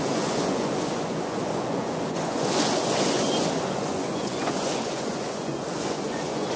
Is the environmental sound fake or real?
fake